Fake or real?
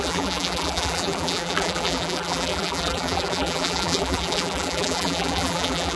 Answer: fake